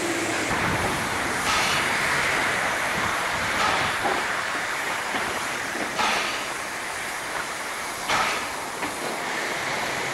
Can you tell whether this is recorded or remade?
remade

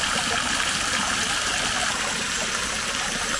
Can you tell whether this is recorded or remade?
recorded